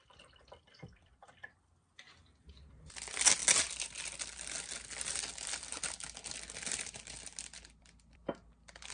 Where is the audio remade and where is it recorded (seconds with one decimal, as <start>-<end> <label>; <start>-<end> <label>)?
0.0-8.9 recorded